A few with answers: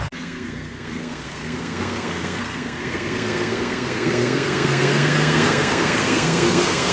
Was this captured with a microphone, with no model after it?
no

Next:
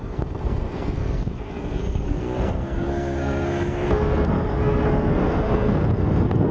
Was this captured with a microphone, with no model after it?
no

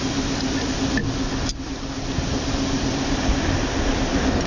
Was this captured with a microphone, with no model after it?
yes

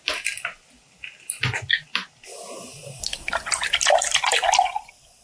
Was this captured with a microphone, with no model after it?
yes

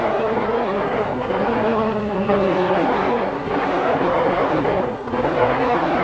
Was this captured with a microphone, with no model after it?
no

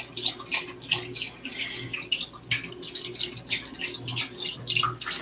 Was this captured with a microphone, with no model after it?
yes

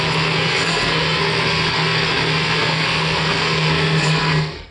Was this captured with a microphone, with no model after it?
no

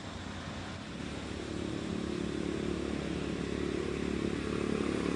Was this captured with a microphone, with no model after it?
yes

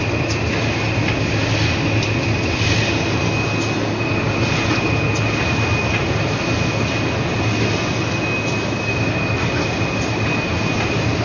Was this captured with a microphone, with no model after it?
yes